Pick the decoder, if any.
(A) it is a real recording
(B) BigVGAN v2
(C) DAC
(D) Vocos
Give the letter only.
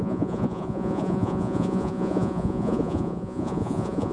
D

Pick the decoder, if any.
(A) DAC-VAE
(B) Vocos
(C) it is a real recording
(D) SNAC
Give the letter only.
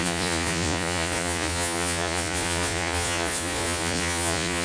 B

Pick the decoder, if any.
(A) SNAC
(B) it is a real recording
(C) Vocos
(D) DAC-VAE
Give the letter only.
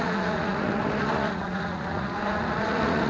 C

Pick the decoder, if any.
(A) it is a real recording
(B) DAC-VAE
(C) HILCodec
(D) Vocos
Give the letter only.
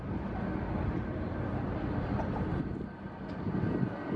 A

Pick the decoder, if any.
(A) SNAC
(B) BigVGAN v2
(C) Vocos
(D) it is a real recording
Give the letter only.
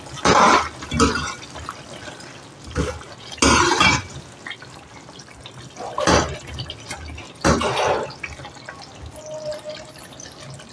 D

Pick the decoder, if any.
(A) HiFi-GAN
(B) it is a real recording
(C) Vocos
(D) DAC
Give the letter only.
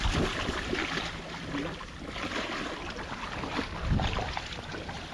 B